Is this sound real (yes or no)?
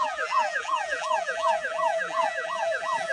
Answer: no